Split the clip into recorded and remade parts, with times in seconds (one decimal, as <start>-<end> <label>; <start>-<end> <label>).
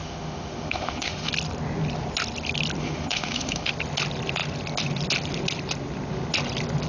0.0-1.3 remade; 1.3-2.8 recorded; 2.8-3.7 remade; 3.7-6.9 recorded